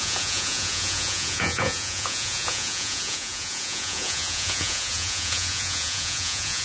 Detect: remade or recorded remade